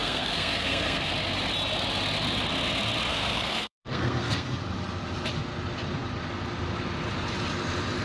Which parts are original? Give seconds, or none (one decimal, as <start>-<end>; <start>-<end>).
1.1-3.1; 4.6-8.0